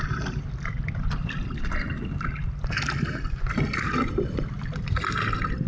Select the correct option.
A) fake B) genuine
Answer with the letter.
A